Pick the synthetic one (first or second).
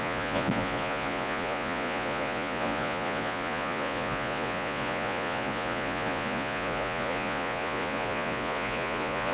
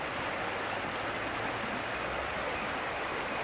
first